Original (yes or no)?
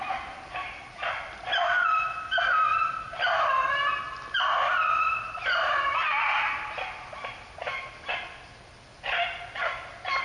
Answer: yes